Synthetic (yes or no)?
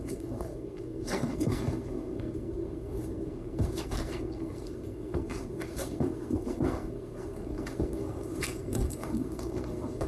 yes